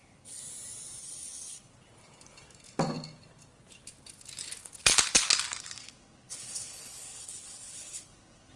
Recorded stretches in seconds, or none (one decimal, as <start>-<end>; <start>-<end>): 0.4-1.0; 1.7-5.6